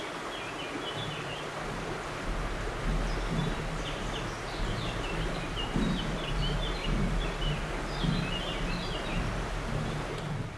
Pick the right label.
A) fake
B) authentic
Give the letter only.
B